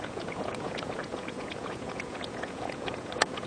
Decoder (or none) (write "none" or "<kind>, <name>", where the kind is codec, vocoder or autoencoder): vocoder, Vocos